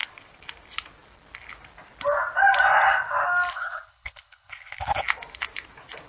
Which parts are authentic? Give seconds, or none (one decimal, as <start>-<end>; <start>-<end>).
0.0-3.5; 5.0-6.1